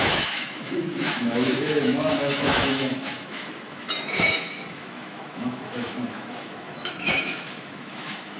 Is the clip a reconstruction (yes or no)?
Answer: yes